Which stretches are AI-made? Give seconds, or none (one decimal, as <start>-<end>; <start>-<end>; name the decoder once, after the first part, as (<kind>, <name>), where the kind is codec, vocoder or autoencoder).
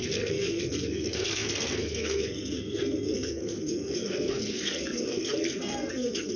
0.0-6.4 (codec, SNAC)